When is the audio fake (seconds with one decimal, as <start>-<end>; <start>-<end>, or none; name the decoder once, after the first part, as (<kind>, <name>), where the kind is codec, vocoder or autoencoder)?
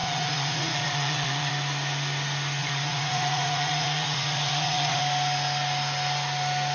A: 0.0-1.5 (vocoder, Vocos); 2.6-5.0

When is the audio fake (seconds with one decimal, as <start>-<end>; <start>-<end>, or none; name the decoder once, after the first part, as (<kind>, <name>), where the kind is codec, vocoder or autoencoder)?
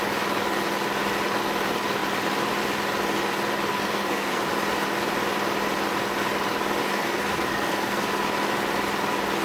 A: 3.7-4.5 (codec, SNAC); 6.9-8.1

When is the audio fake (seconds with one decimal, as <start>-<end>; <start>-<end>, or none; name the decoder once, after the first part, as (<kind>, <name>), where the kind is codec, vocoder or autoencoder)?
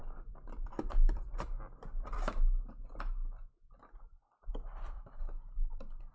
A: 0.0-6.1 (vocoder, BigVGAN v2)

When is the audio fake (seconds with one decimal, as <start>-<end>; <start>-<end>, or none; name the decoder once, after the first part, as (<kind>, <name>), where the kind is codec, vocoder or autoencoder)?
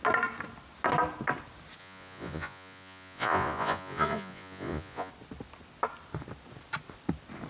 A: 1.8-5.1 (vocoder, Vocos)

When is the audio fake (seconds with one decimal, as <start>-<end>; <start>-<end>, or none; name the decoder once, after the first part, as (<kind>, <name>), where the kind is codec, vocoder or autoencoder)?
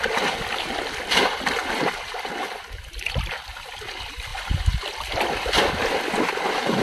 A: none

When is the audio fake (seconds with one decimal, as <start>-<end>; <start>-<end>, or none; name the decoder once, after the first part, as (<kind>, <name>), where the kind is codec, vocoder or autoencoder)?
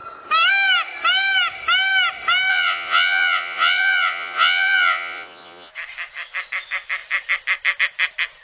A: 2.5-5.7 (vocoder, Vocos)